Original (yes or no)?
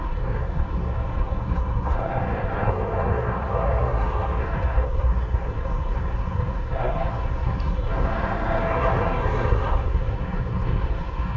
no